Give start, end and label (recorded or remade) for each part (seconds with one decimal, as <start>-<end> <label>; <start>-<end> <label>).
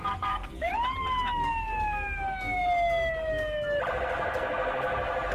0.0-0.7 remade; 0.7-3.9 recorded; 3.9-5.3 remade